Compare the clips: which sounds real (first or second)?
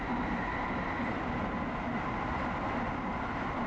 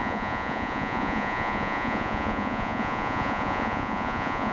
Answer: first